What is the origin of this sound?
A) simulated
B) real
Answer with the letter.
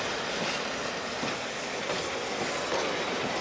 B